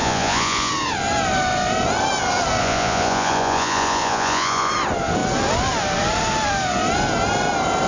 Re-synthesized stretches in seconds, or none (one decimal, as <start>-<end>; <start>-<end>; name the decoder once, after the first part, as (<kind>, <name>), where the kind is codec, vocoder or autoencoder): 0.0-0.7 (vocoder, Vocos); 2.6-4.7